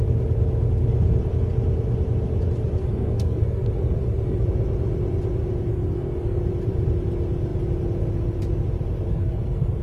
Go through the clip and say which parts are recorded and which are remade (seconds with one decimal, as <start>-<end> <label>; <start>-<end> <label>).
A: 0.0-2.8 recorded; 2.8-4.4 remade; 4.4-5.7 recorded; 5.7-6.4 remade; 6.4-9.1 recorded; 9.1-9.8 remade

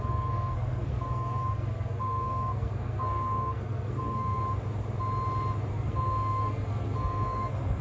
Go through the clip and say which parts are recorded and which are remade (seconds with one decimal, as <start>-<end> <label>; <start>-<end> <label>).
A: 0.0-4.4 remade; 4.4-5.7 recorded; 5.7-7.8 remade